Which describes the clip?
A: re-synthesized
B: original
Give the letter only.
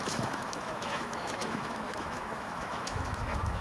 A